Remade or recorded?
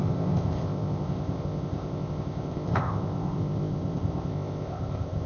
remade